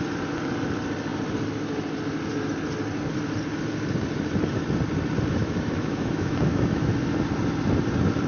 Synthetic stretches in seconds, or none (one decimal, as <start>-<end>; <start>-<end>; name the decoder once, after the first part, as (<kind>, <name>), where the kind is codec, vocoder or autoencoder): 5.4-6.9 (autoencoder, DAC-VAE)